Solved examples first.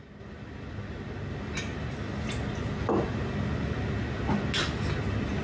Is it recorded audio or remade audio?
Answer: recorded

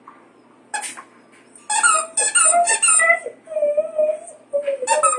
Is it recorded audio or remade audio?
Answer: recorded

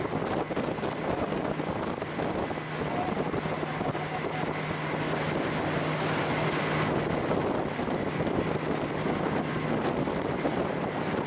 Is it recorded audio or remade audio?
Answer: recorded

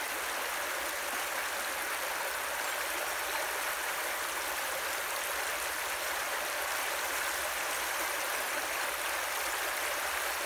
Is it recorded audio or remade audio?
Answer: recorded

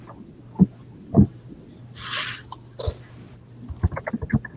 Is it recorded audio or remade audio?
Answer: recorded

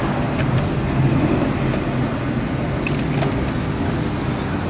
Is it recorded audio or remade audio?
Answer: recorded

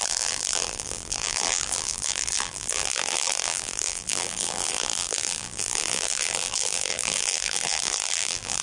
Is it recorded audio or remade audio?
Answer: remade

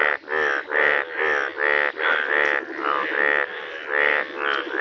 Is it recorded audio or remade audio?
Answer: recorded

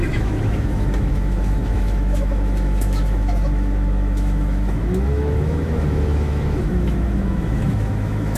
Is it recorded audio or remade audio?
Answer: remade